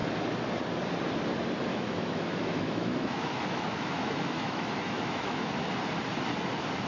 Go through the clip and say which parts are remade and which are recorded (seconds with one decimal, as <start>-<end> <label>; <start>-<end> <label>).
0.0-1.7 recorded; 1.7-5.6 remade; 5.6-6.9 recorded